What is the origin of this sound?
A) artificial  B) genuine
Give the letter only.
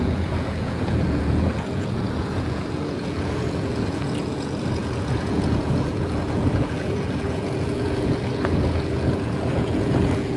A